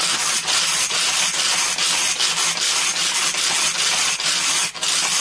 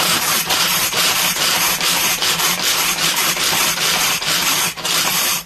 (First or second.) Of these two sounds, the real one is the first